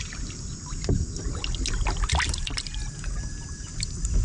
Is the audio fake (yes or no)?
no